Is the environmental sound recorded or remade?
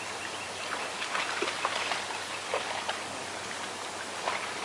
recorded